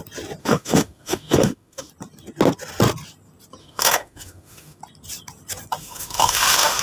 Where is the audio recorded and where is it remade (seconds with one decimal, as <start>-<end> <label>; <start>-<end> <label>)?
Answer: 0.0-0.4 recorded; 0.4-1.9 remade; 1.9-3.6 recorded; 3.6-4.8 remade; 4.8-5.8 recorded; 5.8-6.8 remade